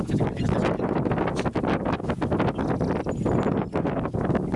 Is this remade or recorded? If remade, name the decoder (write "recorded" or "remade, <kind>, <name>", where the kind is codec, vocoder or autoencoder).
recorded